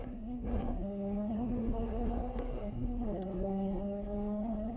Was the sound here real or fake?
fake